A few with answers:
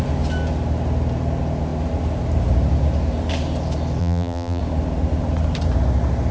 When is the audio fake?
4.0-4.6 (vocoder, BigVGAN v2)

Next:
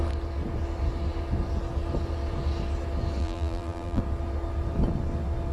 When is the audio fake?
3.2-4.0 (vocoder, BigVGAN v2)

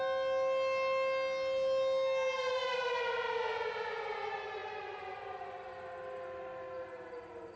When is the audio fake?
4.6-5.7 (vocoder, BigVGAN v2)

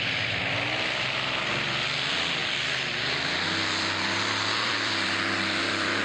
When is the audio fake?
0.0-6.0 (vocoder, BigVGAN v2)

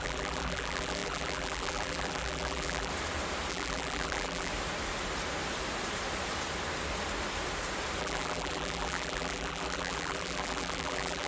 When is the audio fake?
0.0-2.9 (vocoder, BigVGAN v2); 3.5-4.5; 8.0-11.3

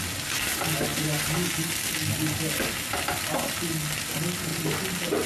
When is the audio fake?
none